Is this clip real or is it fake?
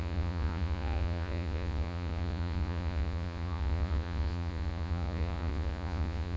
fake